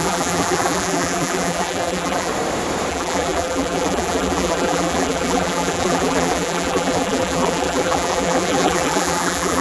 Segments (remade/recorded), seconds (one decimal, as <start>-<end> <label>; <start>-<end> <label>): 0.0-2.3 remade; 2.3-2.9 recorded; 2.9-9.6 remade